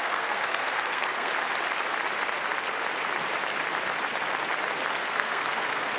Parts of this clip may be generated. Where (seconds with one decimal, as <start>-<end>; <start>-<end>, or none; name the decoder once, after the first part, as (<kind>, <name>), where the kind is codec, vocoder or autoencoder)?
0.0-1.3 (codec, SNAC); 4.9-6.0